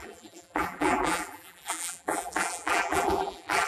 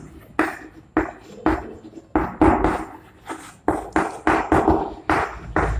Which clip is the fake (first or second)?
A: first